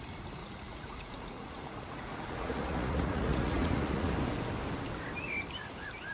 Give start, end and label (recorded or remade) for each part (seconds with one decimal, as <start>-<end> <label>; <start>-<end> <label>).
0.0-0.4 recorded; 0.4-4.1 remade; 4.1-6.1 recorded